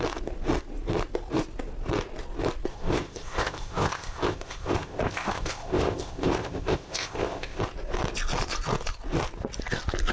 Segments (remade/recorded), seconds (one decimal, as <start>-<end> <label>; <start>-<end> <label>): 0.0-2.7 recorded; 2.7-7.6 remade; 7.6-10.1 recorded